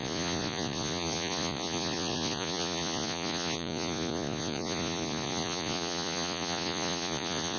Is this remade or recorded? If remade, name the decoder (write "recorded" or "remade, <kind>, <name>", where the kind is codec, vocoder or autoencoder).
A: remade, vocoder, Vocos